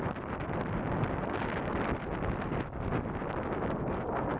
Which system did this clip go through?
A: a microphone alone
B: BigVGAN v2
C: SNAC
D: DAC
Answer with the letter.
A